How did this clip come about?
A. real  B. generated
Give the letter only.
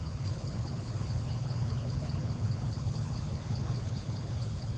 B